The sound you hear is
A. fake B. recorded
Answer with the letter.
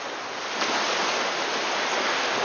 B